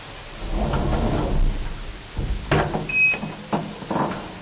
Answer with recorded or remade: recorded